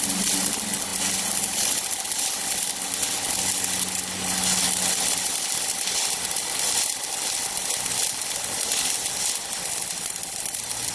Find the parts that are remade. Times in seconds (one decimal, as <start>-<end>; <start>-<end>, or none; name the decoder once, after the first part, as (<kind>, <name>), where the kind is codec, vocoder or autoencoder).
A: none